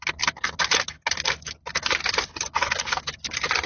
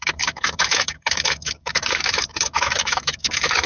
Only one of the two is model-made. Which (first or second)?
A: second